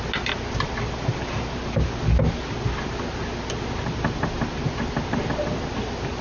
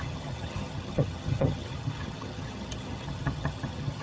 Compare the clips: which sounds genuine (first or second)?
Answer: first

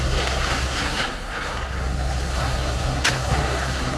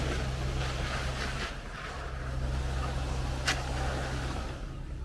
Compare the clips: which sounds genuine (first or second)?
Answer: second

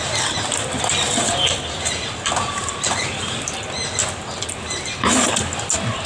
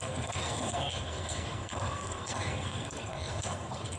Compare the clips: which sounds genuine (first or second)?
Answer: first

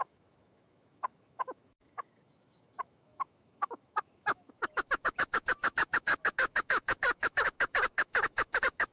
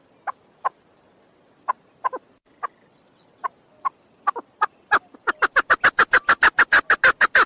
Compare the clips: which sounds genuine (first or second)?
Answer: second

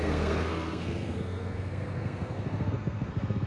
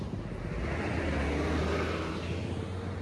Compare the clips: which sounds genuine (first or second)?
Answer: second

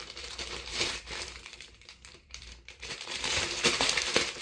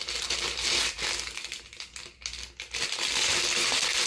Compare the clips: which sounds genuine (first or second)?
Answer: second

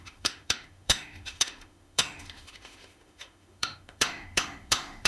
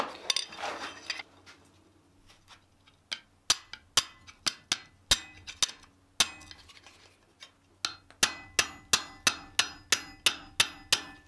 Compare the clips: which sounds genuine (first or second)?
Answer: second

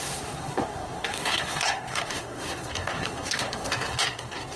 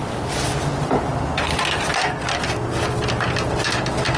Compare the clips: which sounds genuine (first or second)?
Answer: second